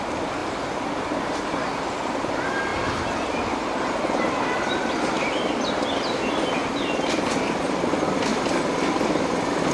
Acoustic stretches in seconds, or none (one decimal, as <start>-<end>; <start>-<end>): 2.7-4.6; 8.3-8.9